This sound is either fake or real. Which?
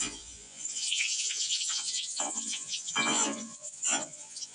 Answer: fake